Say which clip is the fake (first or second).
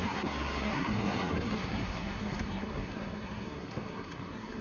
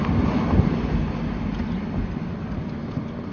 first